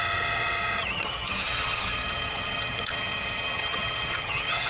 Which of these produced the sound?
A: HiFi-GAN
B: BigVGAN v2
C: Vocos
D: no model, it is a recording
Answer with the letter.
A